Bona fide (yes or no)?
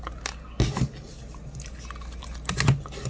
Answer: yes